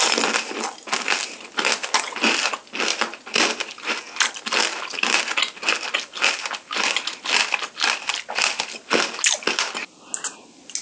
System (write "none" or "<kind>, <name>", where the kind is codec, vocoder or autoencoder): none